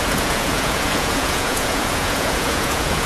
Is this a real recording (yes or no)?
no